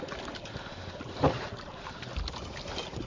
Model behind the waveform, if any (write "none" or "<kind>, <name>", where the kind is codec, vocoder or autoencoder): none